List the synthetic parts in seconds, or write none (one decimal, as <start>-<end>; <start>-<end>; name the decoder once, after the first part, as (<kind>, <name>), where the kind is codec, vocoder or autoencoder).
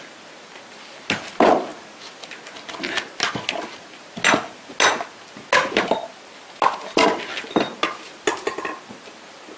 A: none